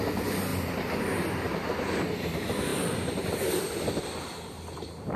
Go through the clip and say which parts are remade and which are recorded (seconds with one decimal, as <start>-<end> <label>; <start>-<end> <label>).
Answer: 0.0-2.7 recorded; 2.7-4.0 remade; 4.0-5.2 recorded